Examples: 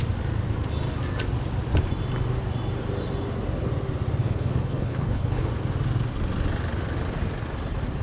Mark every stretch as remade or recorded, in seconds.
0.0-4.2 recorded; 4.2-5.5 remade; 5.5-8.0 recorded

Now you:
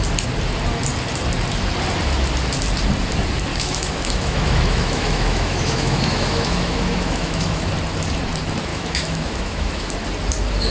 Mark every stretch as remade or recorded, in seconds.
0.0-3.5 recorded; 3.5-7.7 remade; 7.7-8.7 recorded; 8.7-9.9 remade; 9.9-10.7 recorded

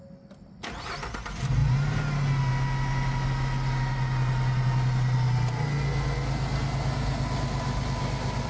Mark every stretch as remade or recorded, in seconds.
0.0-8.5 recorded

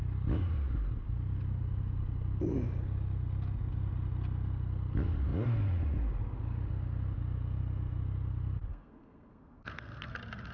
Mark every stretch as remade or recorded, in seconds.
0.0-8.7 recorded; 8.7-10.1 remade; 10.1-10.5 recorded